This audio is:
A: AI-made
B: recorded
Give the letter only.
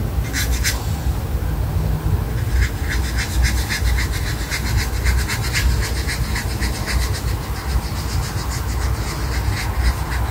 B